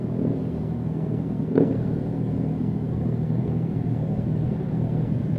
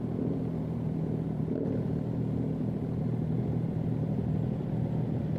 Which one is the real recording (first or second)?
second